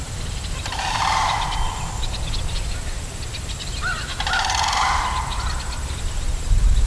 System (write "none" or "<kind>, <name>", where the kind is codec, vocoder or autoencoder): none